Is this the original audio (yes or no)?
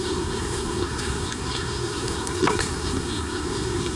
no